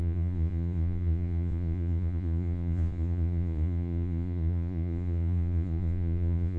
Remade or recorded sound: remade